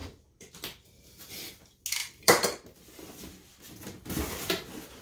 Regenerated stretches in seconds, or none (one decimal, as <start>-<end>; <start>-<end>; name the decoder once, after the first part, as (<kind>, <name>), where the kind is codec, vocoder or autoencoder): 0.0-1.6 (vocoder, BigVGAN v2); 2.0-5.0